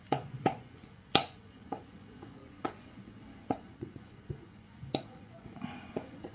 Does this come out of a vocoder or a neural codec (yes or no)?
yes